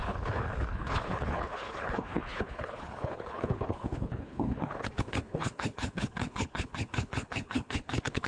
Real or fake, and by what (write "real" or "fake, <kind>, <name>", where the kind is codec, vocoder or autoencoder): fake, codec, HILCodec